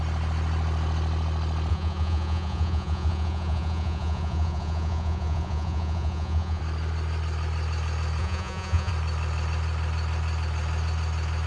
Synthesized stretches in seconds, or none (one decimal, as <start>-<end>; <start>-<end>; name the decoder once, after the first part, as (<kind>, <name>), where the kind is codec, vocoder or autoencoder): 1.7-6.6 (vocoder, Vocos); 8.2-8.9